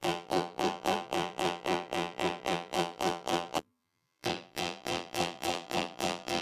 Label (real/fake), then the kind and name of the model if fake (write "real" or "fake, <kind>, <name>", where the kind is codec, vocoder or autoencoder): fake, vocoder, BigVGAN v2